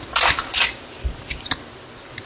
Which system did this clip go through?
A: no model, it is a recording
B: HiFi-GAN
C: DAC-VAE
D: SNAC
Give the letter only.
A